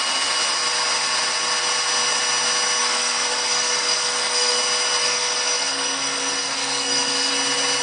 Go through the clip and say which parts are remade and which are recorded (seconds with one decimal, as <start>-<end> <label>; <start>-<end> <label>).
0.0-2.8 recorded; 2.8-4.6 remade; 4.6-5.0 recorded; 5.0-7.3 remade; 7.3-7.8 recorded